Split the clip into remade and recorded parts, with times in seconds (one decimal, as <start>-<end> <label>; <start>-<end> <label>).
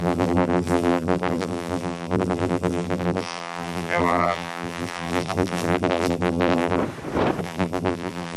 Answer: 0.0-6.8 remade; 6.8-7.4 recorded; 7.4-8.4 remade